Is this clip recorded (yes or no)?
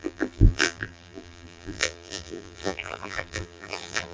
no